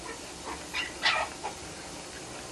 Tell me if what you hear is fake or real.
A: real